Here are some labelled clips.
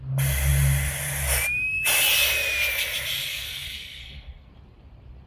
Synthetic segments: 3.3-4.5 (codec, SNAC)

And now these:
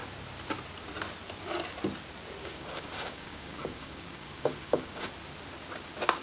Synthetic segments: 2.4-5.1 (codec, DAC)

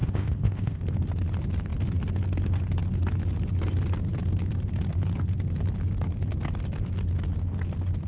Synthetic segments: 0.0-0.8 (codec, ZipCodec)

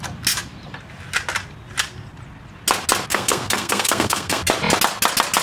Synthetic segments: 3.1-4.4 (codec, SNAC)

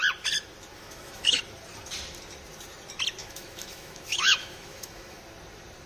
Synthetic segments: 0.7-1.4 (autoencoder, DAC-VAE); 3.2-5.2